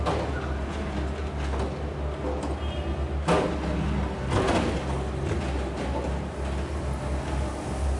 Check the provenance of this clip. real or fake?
real